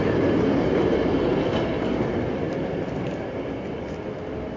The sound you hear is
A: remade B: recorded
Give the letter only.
B